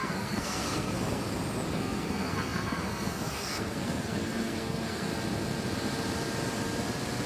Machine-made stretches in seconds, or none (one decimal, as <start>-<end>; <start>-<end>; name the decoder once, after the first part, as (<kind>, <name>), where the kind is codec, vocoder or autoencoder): 0.0-1.2 (codec, SNAC); 1.7-5.1